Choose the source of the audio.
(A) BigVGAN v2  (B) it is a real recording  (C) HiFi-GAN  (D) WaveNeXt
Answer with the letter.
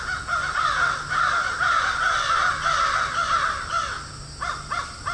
B